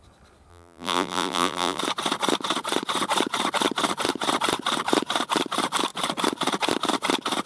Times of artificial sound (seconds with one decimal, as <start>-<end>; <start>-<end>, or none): 0.5-1.8